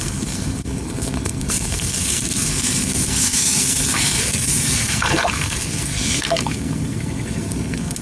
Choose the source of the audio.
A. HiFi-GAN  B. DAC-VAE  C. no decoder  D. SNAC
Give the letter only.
D